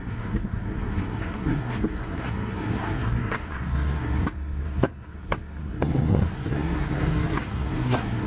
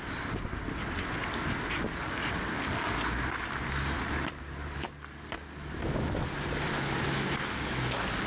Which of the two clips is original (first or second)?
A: second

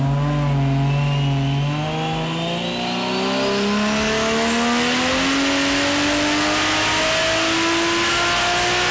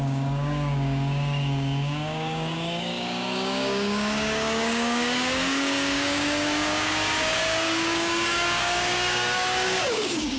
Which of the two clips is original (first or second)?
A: first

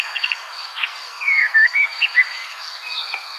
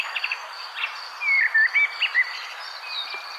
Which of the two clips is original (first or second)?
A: second